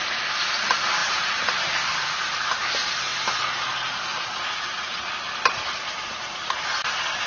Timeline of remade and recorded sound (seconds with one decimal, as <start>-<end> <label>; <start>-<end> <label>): 0.0-1.0 recorded; 1.0-2.1 remade; 2.1-7.3 recorded

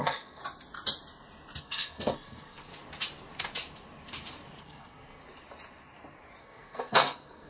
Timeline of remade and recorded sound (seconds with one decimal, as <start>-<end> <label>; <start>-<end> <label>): 0.0-0.4 remade; 0.4-1.6 recorded; 1.6-2.7 remade; 2.7-4.6 recorded; 4.6-5.2 remade; 5.2-6.4 recorded; 6.4-7.5 remade

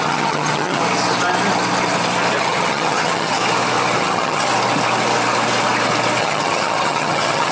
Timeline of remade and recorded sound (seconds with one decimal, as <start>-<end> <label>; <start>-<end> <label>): 0.0-0.8 remade; 0.8-2.4 recorded; 2.4-3.4 remade; 3.4-4.0 recorded; 4.0-4.5 remade; 4.5-6.2 recorded; 6.2-7.5 remade

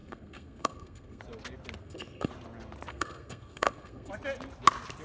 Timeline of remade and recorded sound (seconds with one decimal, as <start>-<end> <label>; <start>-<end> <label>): 0.0-1.2 remade; 1.2-1.8 recorded; 1.8-2.3 remade; 2.3-2.9 recorded; 2.9-4.1 remade; 4.1-5.0 recorded